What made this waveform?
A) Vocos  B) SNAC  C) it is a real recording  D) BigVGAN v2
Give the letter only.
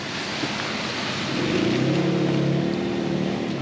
C